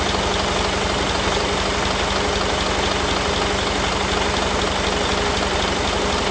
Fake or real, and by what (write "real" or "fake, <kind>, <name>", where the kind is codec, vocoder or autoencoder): real